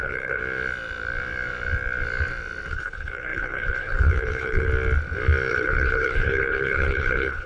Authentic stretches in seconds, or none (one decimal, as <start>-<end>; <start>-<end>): 0.4-2.7; 4.7-5.5